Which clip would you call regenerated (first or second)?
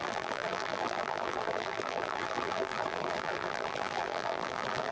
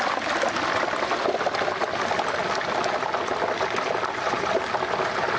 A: first